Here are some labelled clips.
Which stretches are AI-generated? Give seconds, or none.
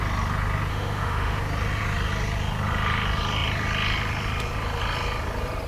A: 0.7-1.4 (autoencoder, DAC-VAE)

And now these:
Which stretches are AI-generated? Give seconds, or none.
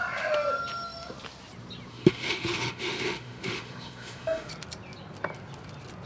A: 1.9-4.5 (autoencoder, DAC-VAE)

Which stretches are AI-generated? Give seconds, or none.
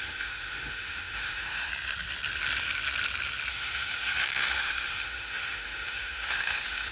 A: 0.0-1.7 (autoencoder, DAC-VAE); 3.5-6.9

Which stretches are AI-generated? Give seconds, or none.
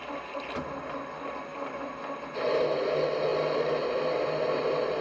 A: none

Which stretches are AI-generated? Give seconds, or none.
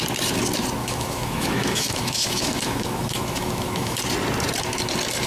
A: 0.8-4.0 (autoencoder, DAC-VAE)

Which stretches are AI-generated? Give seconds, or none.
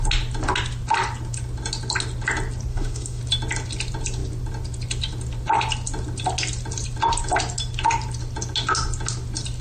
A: 2.7-3.2 (autoencoder, DAC-VAE)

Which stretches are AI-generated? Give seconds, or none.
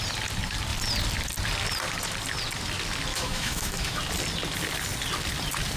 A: 3.1-4.0 (autoencoder, DAC-VAE)